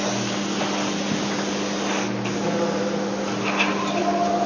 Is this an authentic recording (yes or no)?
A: yes